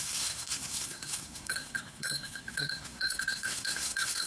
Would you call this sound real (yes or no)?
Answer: no